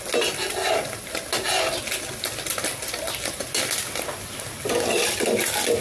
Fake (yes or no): no